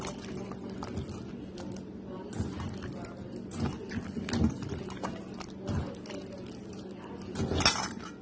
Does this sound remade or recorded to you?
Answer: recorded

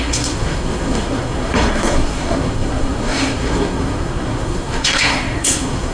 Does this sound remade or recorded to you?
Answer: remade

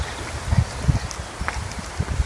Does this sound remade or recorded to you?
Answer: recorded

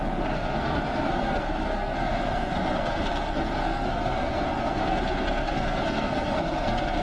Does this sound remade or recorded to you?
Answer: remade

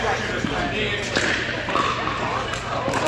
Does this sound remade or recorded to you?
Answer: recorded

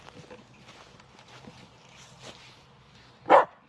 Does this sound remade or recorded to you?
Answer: recorded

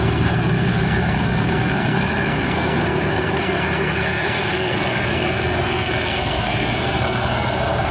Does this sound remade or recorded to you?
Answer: remade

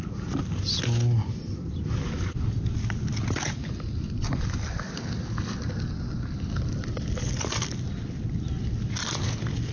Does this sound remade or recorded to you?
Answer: recorded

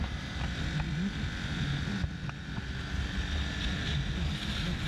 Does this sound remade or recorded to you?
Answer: recorded